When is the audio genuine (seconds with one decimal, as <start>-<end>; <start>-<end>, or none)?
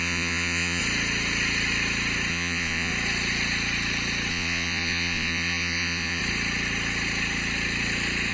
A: 0.8-2.3; 2.9-4.3; 6.2-8.3